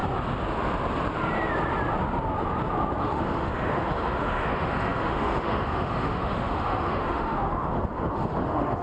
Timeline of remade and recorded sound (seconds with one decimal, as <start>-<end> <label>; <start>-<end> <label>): 0.0-3.0 recorded; 3.0-8.8 remade